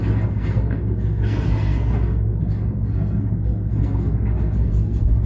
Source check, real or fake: fake